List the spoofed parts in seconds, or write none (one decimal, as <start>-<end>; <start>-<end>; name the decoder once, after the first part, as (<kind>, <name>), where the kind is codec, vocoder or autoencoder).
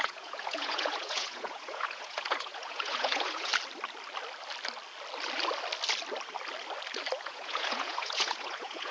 0.0-3.5 (vocoder, Vocos); 7.2-8.9